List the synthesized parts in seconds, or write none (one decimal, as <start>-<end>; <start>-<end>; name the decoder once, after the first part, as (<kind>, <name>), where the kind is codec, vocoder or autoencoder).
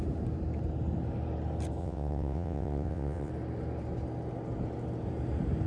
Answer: 1.8-3.3 (vocoder, WaveNeXt)